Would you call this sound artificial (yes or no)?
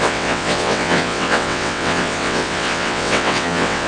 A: yes